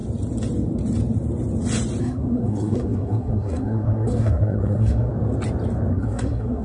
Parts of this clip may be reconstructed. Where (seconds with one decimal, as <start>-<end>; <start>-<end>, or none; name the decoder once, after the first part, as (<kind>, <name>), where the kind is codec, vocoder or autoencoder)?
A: 2.0-5.1 (codec, SNAC); 5.9-6.6